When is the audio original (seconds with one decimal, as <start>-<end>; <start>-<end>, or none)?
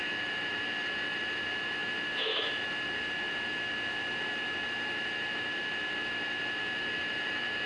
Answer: none